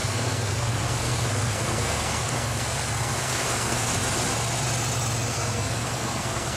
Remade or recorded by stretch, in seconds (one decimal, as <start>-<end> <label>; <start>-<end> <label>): 0.0-4.0 remade; 4.0-5.3 recorded; 5.3-6.6 remade